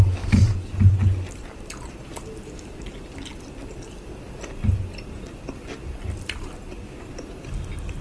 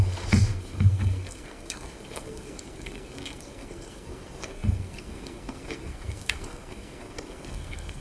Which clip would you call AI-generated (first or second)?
second